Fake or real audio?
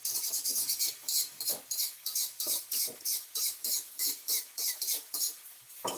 fake